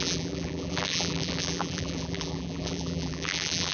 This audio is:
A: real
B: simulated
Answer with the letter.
B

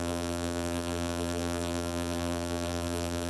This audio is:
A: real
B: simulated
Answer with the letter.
B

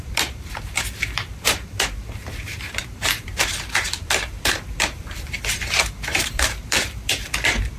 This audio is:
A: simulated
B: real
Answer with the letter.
A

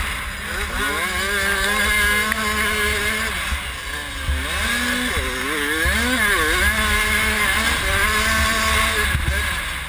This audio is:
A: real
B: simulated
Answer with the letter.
A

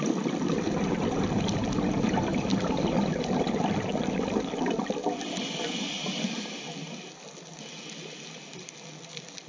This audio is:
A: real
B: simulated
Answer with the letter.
A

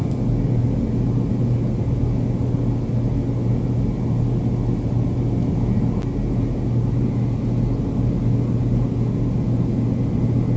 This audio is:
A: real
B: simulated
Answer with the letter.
A